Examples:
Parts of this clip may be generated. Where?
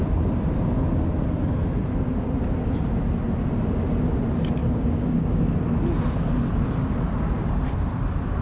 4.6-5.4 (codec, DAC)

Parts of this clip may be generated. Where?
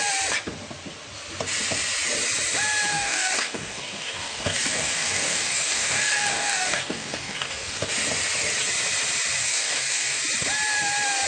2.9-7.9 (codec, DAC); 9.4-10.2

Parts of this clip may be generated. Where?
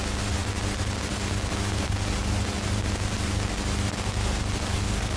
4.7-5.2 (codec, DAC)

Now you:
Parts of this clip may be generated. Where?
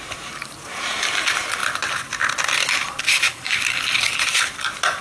3.1-3.8 (codec, DAC)